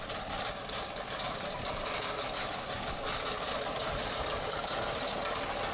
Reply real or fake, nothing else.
real